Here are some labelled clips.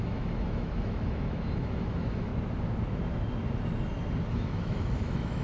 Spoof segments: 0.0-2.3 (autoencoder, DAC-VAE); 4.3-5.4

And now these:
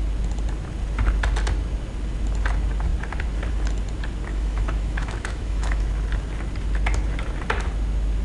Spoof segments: 4.3-5.8 (autoencoder, DAC-VAE)

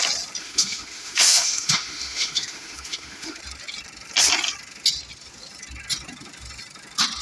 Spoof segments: 0.4-3.4 (autoencoder, DAC-VAE)

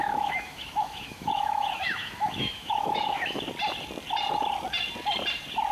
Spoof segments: 0.0-3.4 (autoencoder, DAC-VAE)

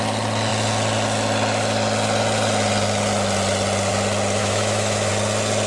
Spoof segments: 4.4-5.1 (autoencoder, DAC-VAE)

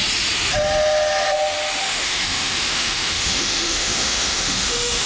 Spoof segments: 1.8-5.1 (autoencoder, DAC-VAE)